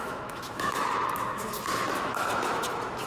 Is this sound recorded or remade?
remade